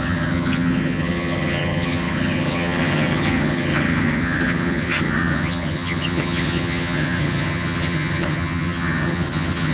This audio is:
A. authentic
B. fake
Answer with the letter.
B